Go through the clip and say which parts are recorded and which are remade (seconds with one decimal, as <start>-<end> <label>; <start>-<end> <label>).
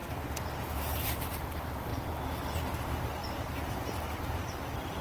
0.0-0.6 recorded; 0.6-1.9 remade; 1.9-2.6 recorded; 2.6-5.0 remade